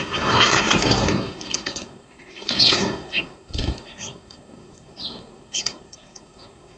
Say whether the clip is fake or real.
fake